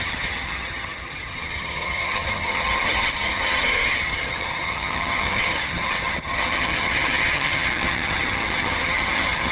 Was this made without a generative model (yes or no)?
no